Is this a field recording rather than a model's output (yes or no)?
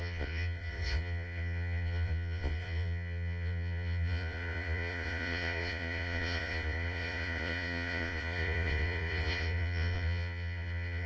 no